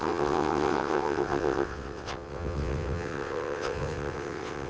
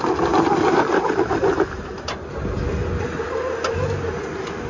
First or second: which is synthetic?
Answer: first